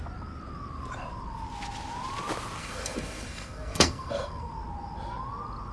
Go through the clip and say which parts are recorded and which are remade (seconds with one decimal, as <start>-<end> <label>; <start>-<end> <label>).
0.0-2.6 recorded; 2.6-4.5 remade; 4.5-5.7 recorded